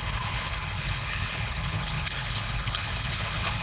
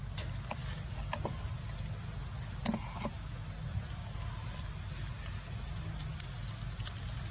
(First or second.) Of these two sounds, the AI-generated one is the first